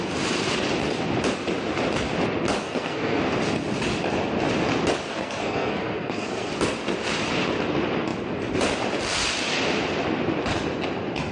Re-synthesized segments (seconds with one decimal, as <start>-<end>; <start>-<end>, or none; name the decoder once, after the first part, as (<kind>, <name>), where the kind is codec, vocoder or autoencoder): 2.6-3.2 (codec, SNAC); 5.1-6.5